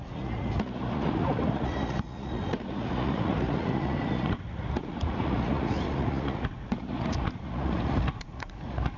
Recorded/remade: remade